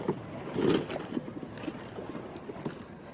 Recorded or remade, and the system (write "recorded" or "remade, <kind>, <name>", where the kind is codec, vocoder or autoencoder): recorded